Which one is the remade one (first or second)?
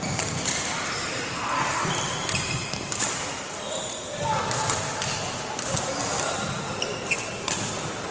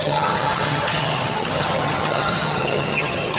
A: second